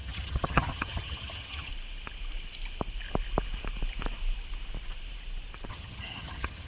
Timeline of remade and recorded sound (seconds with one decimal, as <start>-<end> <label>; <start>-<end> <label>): 0.0-1.7 remade; 1.7-5.7 recorded; 5.7-6.7 remade